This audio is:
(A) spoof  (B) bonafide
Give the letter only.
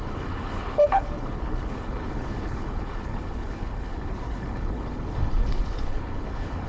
A